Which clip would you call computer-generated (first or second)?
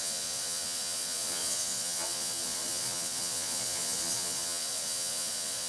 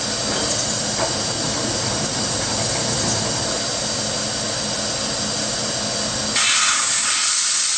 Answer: first